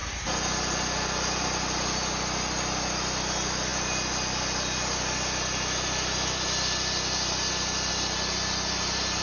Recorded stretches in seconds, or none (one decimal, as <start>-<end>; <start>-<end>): 0.0-9.2